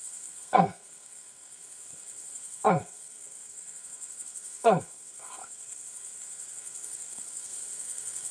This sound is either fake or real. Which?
fake